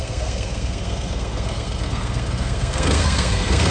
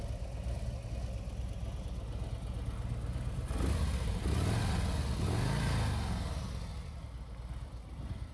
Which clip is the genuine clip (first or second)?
second